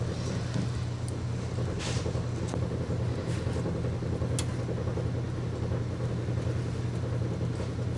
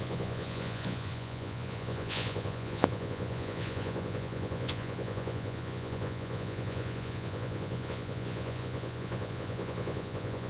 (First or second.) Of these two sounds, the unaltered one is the first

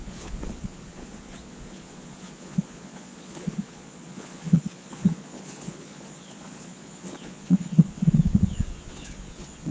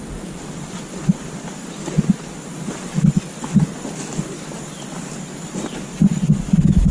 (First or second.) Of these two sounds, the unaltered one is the second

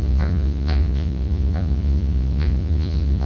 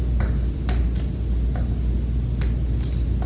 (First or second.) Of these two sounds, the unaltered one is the second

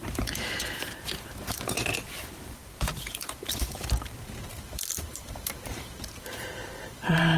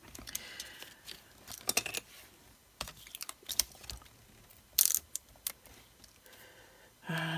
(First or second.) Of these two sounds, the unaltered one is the second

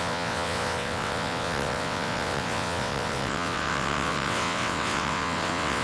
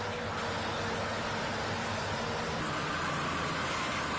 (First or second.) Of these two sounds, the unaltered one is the second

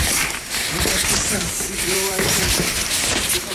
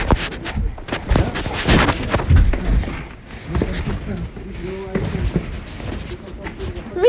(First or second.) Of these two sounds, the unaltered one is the second